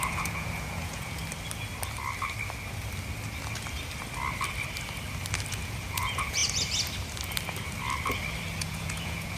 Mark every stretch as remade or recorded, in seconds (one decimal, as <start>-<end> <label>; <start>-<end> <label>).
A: 0.0-1.2 remade; 1.2-5.5 recorded; 5.5-6.4 remade; 6.4-8.6 recorded; 8.6-9.4 remade